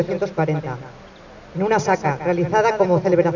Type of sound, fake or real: real